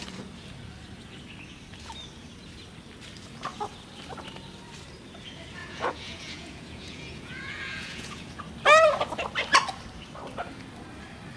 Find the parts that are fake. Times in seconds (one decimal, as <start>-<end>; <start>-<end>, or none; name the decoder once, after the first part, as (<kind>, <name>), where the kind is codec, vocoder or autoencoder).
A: 5.6-8.4 (vocoder, Vocos)